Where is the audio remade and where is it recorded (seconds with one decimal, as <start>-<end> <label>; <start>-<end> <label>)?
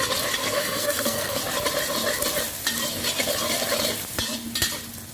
0.0-0.4 recorded; 0.4-1.4 remade; 1.4-5.1 recorded